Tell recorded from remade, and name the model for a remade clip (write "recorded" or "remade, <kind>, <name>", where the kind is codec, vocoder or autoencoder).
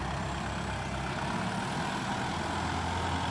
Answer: recorded